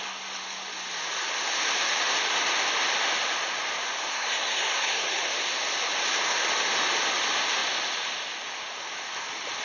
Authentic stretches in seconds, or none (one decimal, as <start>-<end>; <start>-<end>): 0.0-4.1; 5.2-9.6